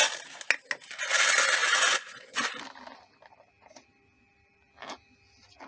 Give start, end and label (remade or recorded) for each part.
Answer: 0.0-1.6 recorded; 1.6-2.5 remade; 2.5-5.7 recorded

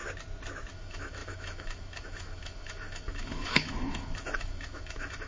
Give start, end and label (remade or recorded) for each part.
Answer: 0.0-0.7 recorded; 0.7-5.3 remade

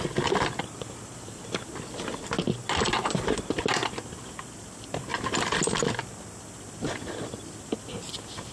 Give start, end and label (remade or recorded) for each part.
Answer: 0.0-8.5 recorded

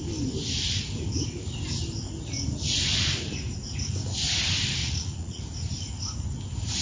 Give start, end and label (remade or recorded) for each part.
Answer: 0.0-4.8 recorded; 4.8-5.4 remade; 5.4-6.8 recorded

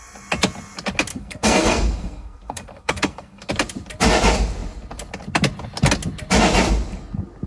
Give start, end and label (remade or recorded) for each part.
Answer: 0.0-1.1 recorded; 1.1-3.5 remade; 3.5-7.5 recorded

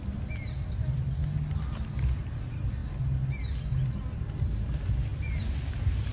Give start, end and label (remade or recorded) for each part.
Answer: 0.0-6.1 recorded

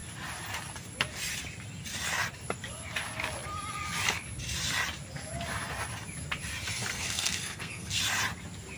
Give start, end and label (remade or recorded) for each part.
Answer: 0.0-6.9 recorded; 6.9-8.0 remade; 8.0-8.8 recorded